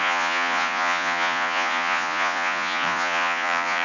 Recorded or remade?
remade